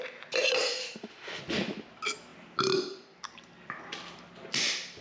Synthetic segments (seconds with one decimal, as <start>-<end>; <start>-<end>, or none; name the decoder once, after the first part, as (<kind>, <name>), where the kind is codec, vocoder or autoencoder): 0.8-1.4 (autoencoder, DAC-VAE)